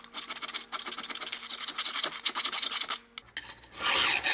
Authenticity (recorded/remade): recorded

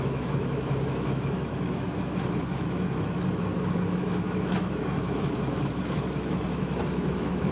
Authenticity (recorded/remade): remade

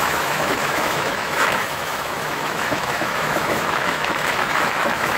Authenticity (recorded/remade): remade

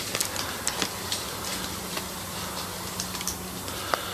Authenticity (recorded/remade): recorded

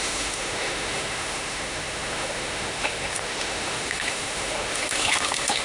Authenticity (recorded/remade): remade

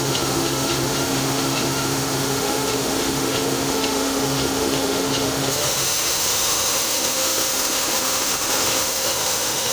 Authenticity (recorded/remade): remade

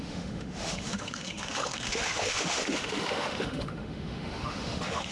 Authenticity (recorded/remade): remade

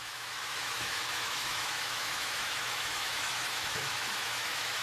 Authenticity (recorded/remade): remade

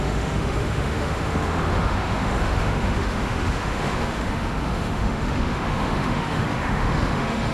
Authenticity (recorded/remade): remade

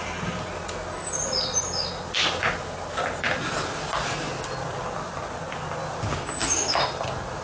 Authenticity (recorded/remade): recorded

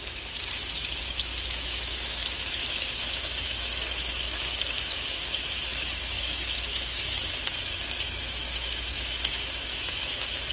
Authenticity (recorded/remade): remade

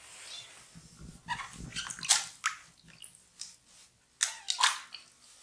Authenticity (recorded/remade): recorded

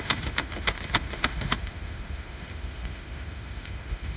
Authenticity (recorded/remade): remade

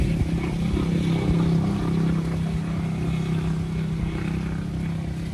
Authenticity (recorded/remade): recorded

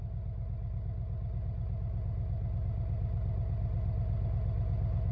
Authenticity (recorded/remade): recorded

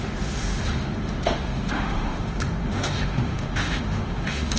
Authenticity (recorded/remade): remade